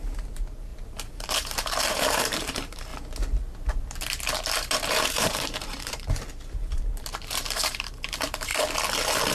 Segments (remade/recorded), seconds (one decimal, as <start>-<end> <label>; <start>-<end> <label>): 0.0-2.9 remade; 2.9-4.7 recorded; 4.7-8.5 remade; 8.5-9.3 recorded